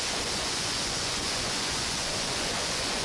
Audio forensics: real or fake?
fake